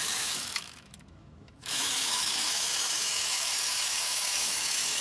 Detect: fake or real fake